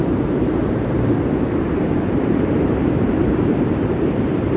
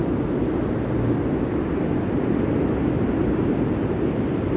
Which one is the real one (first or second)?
second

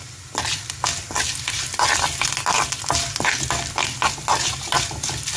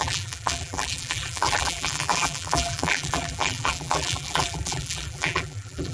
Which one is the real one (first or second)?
first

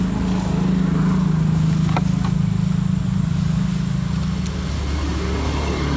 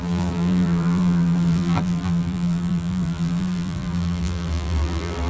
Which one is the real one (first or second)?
first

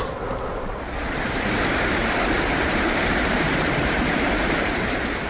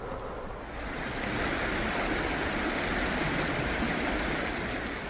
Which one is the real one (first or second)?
second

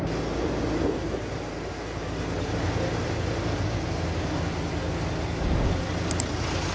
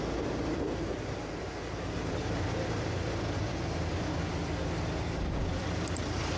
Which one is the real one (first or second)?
first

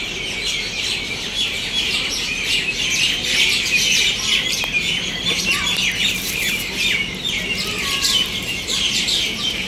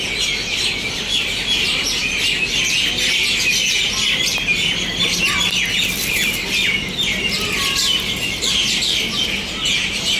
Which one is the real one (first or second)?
second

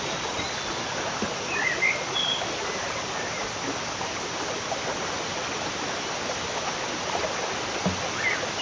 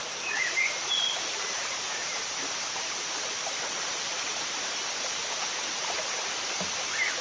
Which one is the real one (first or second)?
first